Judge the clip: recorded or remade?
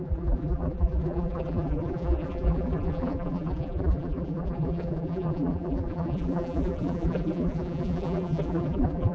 remade